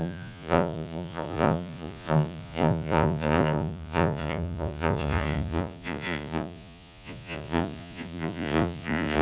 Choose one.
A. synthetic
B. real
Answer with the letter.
A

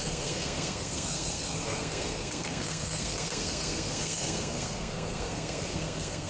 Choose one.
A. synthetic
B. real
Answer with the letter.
A